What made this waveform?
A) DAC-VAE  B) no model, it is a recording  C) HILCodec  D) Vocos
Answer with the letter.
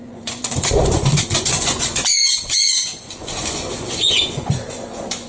D